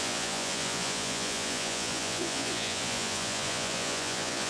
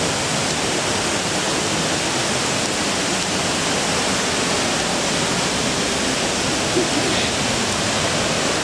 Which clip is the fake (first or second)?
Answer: first